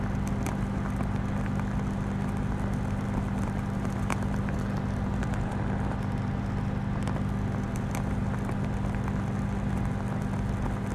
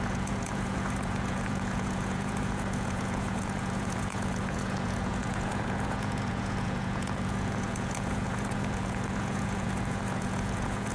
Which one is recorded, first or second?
first